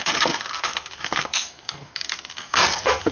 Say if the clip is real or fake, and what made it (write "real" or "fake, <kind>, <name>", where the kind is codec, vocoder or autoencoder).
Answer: fake, codec, SNAC